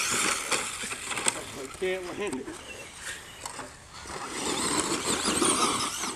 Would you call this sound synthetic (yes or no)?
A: no